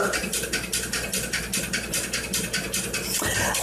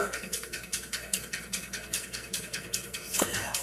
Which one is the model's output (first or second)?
second